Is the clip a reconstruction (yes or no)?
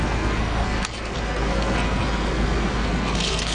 yes